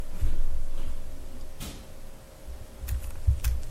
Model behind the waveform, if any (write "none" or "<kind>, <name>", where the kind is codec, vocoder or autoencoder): none